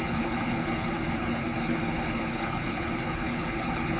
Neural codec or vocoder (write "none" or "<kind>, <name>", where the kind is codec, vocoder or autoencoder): codec, HILCodec